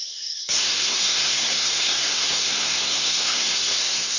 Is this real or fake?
fake